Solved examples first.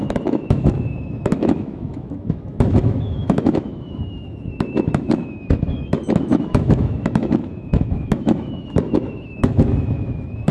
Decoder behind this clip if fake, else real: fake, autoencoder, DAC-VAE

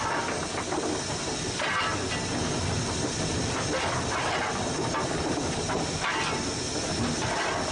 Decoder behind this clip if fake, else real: real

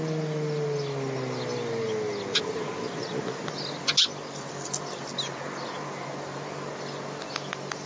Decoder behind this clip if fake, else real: real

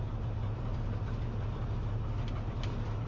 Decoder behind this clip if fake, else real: real